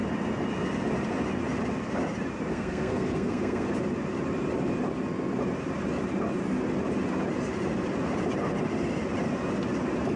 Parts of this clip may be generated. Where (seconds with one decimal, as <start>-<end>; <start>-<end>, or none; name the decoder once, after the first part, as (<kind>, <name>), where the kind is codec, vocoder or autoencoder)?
2.5-3.7 (codec, SNAC)